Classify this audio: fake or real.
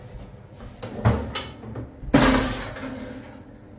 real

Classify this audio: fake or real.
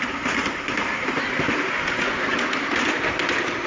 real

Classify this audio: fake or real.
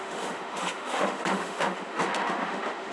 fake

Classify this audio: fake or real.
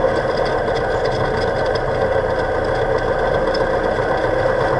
real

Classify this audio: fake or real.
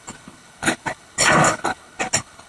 fake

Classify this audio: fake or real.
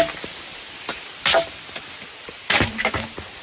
real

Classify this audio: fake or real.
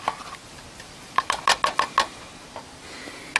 real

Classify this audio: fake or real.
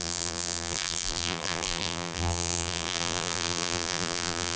fake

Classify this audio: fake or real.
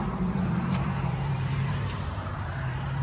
fake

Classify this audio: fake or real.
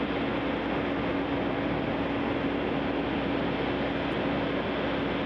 real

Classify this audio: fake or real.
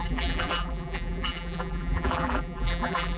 fake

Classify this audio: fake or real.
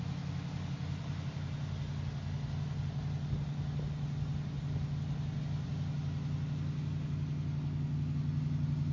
real